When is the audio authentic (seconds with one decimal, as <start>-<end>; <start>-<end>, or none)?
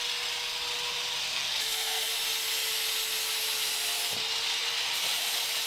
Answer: 0.0-1.3; 2.1-5.7